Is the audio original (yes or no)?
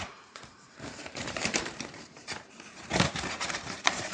no